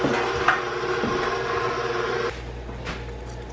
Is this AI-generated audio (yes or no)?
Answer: no